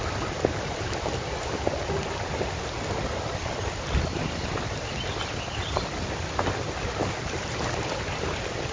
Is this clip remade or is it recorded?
recorded